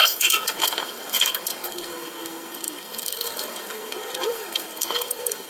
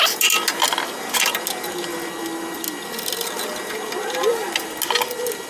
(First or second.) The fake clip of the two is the first